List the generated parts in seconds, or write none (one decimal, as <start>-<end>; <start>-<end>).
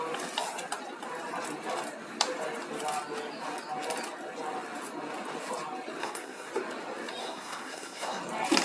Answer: 6.0-6.5; 7.2-8.2